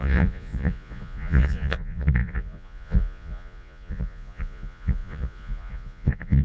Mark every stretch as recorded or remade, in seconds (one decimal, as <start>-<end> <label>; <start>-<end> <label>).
0.0-6.4 remade